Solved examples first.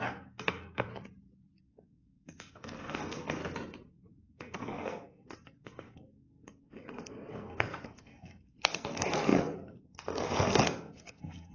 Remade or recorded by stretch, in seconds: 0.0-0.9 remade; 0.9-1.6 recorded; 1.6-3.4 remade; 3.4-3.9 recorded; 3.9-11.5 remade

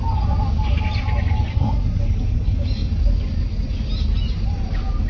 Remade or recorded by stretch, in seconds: 0.0-1.5 recorded; 1.5-2.0 remade; 2.0-5.1 recorded

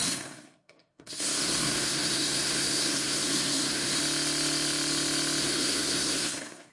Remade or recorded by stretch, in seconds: 0.0-4.0 remade; 4.0-5.4 recorded; 5.4-6.7 remade

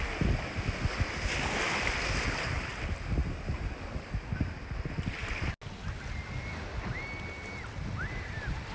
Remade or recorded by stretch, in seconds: 0.0-8.7 recorded

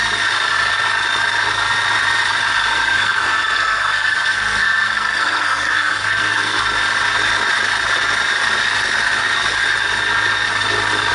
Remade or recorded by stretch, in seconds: 0.0-2.7 recorded; 2.7-6.6 remade; 6.6-11.1 recorded

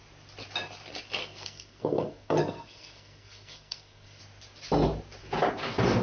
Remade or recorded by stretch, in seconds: 0.0-1.2 recorded; 1.2-4.2 remade; 4.2-6.0 recorded